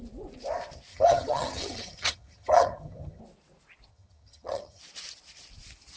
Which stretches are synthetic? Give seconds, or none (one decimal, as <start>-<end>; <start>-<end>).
0.9-3.2; 3.9-4.8